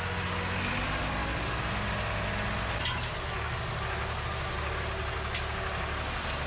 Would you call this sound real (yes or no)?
yes